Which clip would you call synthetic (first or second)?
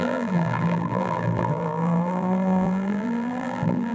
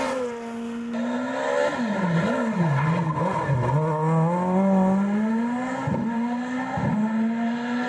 first